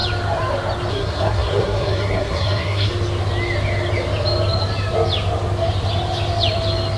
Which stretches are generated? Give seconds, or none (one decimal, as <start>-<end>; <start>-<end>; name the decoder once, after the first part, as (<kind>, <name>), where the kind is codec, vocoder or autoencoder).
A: 0.9-2.9 (codec, SNAC)